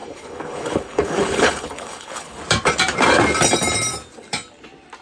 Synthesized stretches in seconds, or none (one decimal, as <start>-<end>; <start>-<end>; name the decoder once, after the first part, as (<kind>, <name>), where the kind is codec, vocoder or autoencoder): 0.0-2.4 (codec, HILCodec)